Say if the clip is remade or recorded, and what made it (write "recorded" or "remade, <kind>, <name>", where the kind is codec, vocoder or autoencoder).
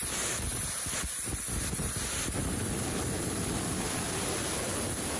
recorded